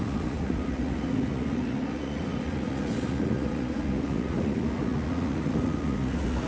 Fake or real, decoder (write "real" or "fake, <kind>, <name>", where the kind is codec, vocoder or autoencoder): fake, vocoder, Vocos